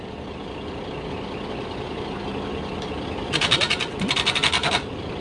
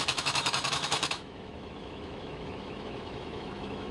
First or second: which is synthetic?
second